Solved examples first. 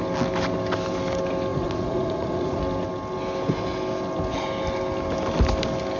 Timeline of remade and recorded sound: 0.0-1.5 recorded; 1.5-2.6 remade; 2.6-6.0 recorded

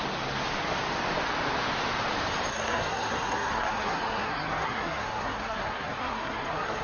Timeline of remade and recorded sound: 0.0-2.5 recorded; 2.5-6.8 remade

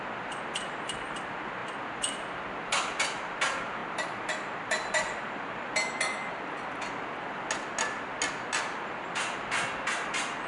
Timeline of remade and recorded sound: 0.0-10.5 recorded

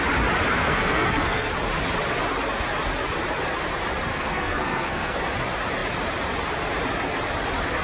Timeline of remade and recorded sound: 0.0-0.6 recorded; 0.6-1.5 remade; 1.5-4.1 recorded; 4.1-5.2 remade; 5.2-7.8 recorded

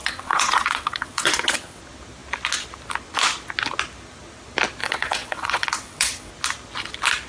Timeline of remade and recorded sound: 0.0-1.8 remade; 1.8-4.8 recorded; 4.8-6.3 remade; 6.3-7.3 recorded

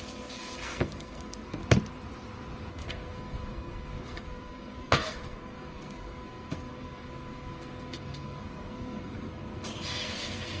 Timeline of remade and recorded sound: 0.0-1.6 remade; 1.6-2.7 recorded; 2.7-10.6 remade

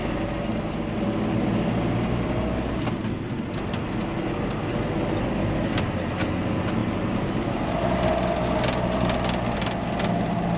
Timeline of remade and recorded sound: 0.0-6.8 recorded; 6.8-7.8 remade; 7.8-10.6 recorded